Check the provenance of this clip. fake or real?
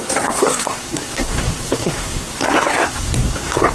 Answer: fake